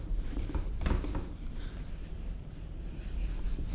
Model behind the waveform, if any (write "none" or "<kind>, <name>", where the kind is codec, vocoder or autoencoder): vocoder, BigVGAN v2